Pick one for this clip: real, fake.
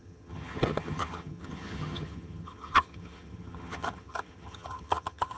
fake